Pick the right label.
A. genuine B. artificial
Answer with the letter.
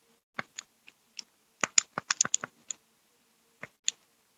A